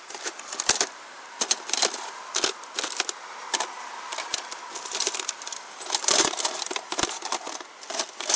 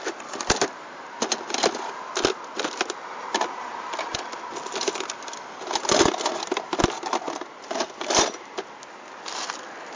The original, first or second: second